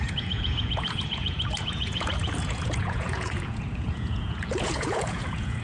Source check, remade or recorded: remade